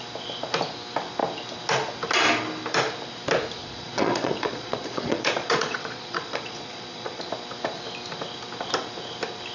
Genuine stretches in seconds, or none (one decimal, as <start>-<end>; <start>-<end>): 0.0-3.6; 7.3-9.5